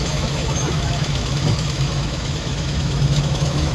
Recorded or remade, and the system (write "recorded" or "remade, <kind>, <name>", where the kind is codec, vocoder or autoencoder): remade, autoencoder, DAC-VAE